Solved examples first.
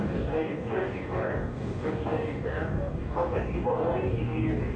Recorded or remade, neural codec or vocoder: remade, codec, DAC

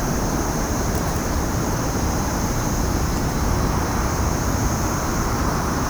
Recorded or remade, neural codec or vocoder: remade, vocoder, BigVGAN v2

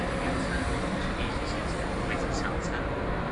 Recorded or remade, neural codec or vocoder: recorded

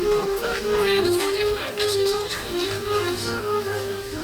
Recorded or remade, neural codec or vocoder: remade, codec, DAC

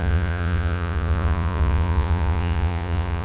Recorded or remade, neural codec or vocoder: remade, vocoder, Vocos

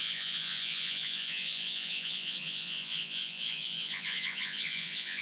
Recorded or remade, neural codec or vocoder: remade, vocoder, Vocos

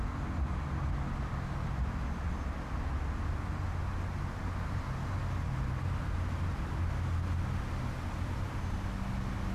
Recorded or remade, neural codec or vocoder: recorded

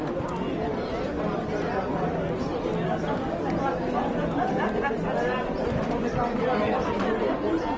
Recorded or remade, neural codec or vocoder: recorded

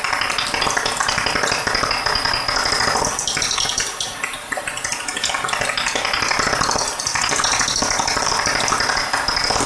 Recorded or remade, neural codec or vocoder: recorded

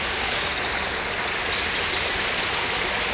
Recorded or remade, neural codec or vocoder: recorded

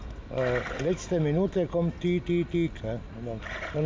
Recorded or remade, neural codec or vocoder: recorded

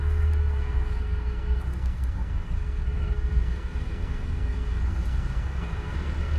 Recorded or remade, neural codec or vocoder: remade, codec, SNAC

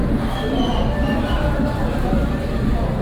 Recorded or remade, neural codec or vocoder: recorded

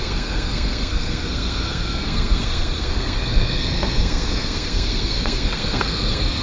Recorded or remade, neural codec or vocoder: remade, codec, SNAC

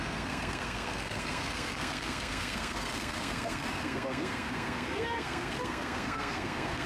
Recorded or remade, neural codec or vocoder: remade, codec, SNAC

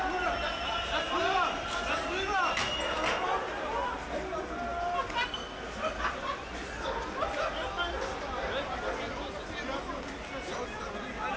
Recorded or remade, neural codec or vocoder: recorded